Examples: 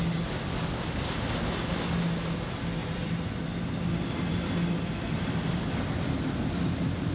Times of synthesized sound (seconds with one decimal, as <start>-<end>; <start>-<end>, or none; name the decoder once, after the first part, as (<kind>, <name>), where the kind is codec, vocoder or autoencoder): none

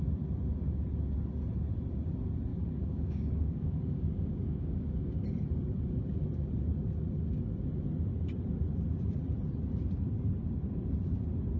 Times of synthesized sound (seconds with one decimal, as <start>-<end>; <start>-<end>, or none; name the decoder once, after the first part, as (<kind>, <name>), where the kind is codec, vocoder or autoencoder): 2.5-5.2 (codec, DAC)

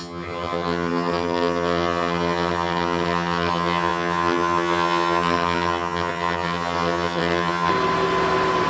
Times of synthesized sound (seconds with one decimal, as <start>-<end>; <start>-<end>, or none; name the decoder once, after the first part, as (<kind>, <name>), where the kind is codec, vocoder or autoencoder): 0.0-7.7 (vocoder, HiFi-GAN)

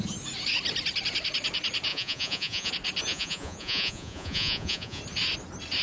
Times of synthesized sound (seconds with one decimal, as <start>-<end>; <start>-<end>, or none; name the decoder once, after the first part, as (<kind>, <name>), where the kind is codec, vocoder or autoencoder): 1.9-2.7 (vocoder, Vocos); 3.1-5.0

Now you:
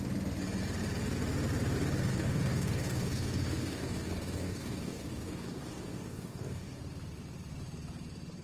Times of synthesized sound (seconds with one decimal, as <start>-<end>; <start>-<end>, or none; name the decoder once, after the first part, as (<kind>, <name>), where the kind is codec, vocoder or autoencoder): 2.1-6.8 (codec, DAC)

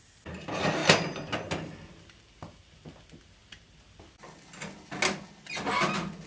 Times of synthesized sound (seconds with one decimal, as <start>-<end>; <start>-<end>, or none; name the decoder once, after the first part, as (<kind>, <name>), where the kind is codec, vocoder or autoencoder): none